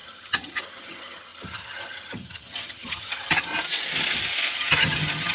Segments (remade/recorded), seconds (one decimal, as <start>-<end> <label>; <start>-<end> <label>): 0.0-3.5 remade; 3.5-4.5 recorded; 4.5-5.3 remade